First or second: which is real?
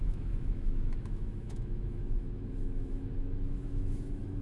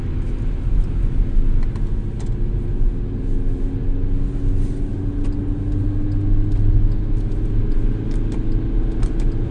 second